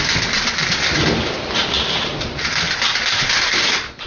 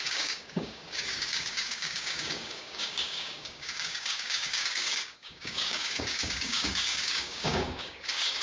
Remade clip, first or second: second